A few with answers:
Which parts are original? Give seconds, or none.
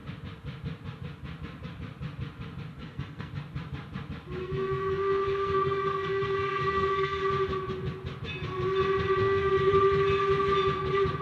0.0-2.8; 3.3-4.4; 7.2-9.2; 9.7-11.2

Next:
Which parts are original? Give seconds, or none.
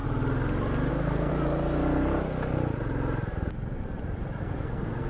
0.0-0.9; 1.3-4.4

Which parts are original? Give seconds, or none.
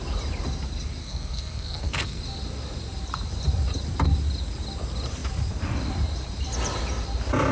0.0-1.0; 2.2-7.5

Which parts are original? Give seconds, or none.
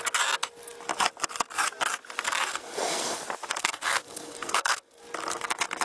0.0-2.5; 3.2-3.6; 5.0-5.8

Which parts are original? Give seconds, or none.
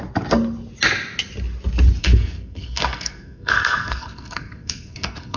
0.0-2.0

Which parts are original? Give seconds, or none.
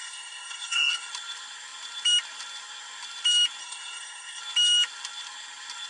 1.1-3.6; 4.4-5.9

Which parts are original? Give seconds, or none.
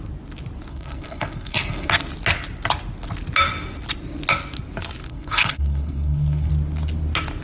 0.0-0.7; 1.9-5.1; 6.5-7.4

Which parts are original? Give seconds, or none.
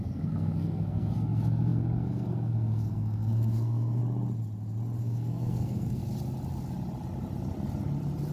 4.0-5.0; 6.0-8.3